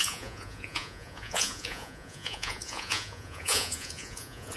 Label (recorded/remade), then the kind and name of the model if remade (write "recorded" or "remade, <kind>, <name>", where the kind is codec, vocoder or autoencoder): remade, vocoder, Vocos